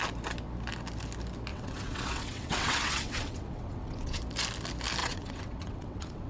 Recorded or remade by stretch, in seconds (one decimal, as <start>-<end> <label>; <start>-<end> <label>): 0.0-1.5 recorded; 1.5-4.2 remade; 4.2-5.0 recorded; 5.0-6.3 remade